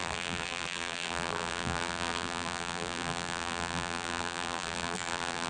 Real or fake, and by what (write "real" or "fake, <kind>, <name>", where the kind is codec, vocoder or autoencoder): fake, vocoder, BigVGAN v2